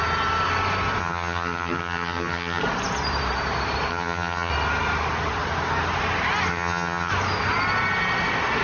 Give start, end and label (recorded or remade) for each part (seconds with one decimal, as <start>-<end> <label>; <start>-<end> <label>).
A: 0.0-1.0 recorded; 1.0-2.6 remade; 2.6-3.9 recorded; 3.9-4.5 remade; 4.5-6.5 recorded; 6.5-7.1 remade; 7.1-8.6 recorded